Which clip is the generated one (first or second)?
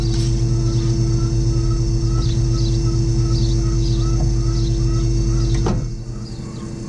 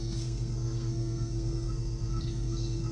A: second